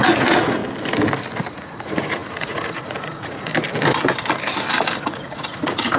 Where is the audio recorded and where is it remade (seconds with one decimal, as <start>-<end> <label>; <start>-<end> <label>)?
0.0-0.6 remade; 0.6-1.5 recorded; 1.5-3.5 remade; 3.5-5.0 recorded; 5.0-6.0 remade